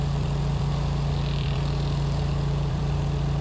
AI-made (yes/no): yes